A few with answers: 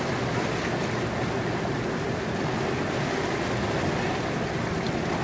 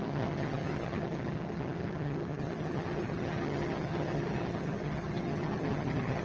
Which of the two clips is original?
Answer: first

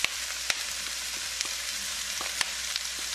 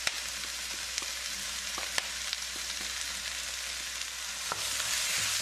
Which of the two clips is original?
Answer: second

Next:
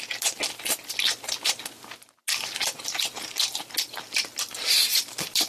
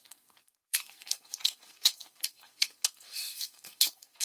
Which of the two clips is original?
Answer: first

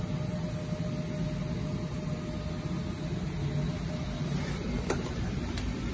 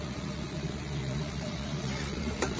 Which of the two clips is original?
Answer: first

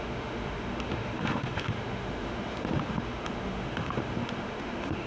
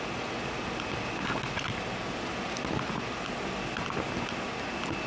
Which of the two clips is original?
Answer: second